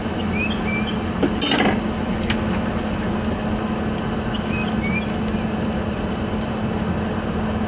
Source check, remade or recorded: recorded